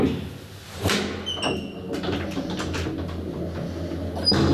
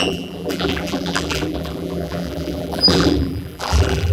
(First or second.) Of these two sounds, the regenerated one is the second